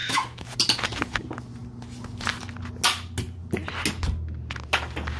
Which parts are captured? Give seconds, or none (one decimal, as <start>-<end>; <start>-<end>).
0.5-5.2

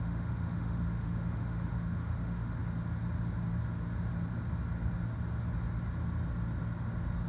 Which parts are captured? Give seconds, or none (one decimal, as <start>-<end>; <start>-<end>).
2.6-7.3

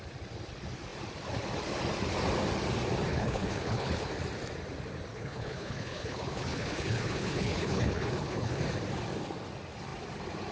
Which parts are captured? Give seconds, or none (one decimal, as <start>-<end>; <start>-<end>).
0.0-3.1; 4.1-5.1; 8.6-10.5

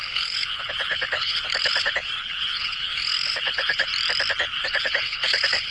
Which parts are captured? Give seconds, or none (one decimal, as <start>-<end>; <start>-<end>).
3.9-4.6

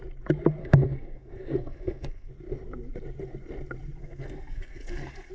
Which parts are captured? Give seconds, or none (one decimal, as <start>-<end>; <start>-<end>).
0.0-0.6; 2.3-4.0

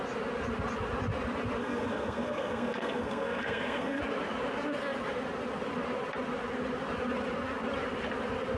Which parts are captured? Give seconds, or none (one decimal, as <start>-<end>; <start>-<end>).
0.0-1.6; 4.0-8.6

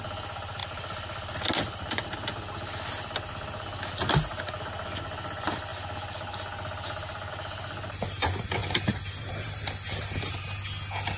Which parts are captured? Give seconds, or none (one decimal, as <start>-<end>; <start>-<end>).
0.0-8.6; 10.4-11.2